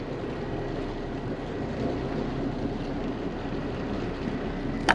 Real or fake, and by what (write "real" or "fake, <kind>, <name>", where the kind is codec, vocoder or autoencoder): real